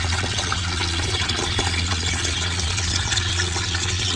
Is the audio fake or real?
fake